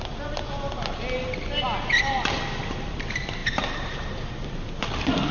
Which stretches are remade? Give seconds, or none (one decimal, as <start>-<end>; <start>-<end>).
none